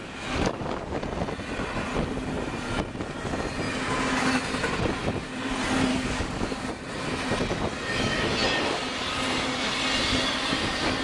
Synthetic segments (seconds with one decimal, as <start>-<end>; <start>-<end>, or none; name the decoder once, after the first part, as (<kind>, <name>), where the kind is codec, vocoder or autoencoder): 0.0-1.0 (codec, DAC); 5.9-6.7